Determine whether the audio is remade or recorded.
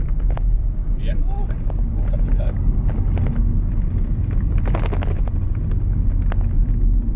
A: recorded